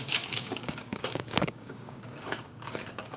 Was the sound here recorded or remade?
remade